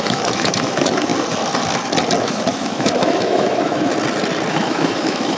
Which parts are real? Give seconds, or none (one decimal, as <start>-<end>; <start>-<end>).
1.1-2.2; 3.9-4.5